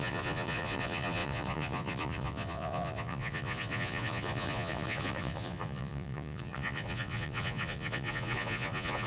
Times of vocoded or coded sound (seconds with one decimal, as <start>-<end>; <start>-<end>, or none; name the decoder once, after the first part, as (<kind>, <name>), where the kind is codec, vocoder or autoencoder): 0.0-9.1 (vocoder, Vocos)